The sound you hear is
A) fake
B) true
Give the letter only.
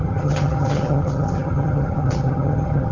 A